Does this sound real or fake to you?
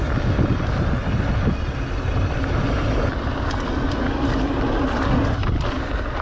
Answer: real